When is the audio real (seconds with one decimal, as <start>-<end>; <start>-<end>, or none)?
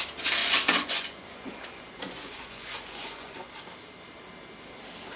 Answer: 0.0-0.4; 3.5-5.2